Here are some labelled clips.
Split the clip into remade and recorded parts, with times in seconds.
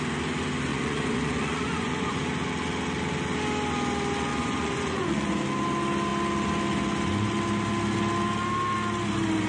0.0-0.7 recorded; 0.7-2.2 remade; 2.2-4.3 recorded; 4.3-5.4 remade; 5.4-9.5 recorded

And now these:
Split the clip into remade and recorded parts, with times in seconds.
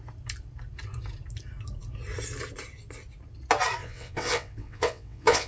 0.0-3.8 recorded; 3.8-5.5 remade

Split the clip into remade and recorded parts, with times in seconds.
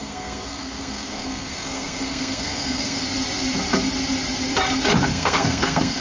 0.0-3.0 remade; 3.0-5.1 recorded; 5.1-6.0 remade